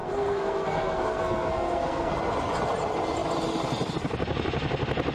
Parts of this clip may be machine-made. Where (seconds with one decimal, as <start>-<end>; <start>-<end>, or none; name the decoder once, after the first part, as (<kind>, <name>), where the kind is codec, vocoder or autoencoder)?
0.0-2.1 (codec, SNAC)